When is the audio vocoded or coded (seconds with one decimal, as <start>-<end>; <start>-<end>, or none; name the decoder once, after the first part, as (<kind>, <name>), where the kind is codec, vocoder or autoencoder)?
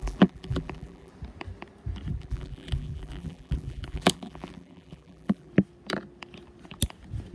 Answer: 0.0-1.1 (vocoder, BigVGAN v2); 2.1-5.5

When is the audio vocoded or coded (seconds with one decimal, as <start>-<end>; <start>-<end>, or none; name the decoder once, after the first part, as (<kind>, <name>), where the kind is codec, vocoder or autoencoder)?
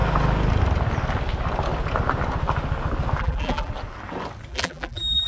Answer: 3.2-3.7 (vocoder, BigVGAN v2); 4.5-5.3